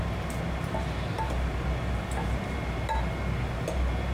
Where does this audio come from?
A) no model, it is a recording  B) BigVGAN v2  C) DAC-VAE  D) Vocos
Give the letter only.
A